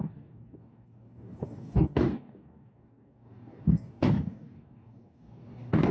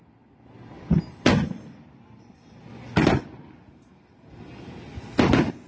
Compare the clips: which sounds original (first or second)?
second